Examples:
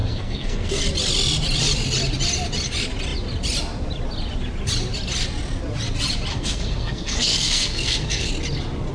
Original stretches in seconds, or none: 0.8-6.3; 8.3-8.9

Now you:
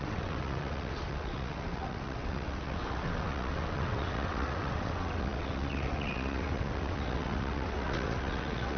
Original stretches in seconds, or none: none

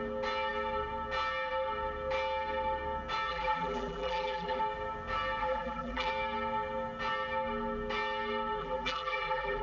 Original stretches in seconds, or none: 0.0-3.3; 4.6-5.4; 6.1-8.6

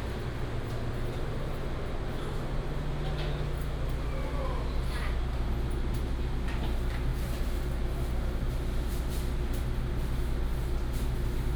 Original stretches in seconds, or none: 0.0-11.6

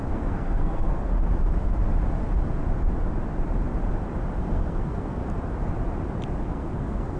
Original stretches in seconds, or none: 1.1-4.4; 5.2-6.4

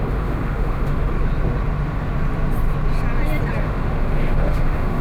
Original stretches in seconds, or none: 1.1-3.6

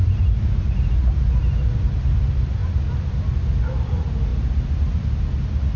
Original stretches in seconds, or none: 0.0-2.6; 3.2-5.8

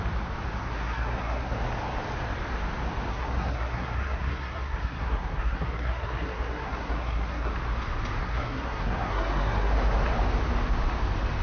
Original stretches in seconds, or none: 0.0-0.6; 1.6-3.1; 7.5-8.2; 9.7-11.4